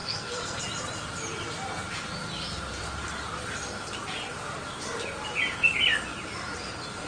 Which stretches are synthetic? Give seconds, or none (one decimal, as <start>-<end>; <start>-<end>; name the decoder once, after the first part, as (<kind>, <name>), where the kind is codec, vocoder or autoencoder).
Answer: 0.0-0.6 (codec, SNAC)